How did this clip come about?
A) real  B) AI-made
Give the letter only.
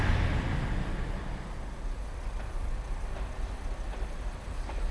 A